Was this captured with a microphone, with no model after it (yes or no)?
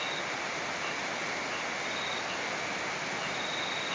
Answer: yes